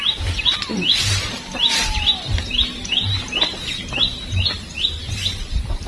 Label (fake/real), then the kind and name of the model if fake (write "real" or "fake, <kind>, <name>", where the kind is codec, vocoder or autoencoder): fake, vocoder, BigVGAN v2